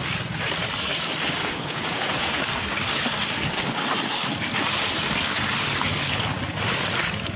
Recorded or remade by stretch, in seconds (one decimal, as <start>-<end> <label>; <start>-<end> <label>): 0.0-1.4 recorded; 1.4-2.4 remade; 2.4-7.4 recorded